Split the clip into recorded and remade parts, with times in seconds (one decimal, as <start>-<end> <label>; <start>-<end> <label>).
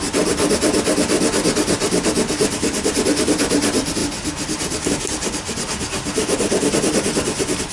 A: 0.0-7.7 recorded